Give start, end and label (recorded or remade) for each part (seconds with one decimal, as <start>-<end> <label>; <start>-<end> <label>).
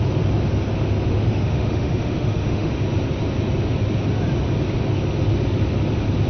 0.0-1.1 recorded; 1.1-2.7 remade; 2.7-6.3 recorded